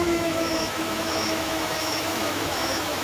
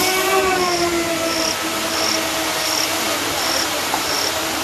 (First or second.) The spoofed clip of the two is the first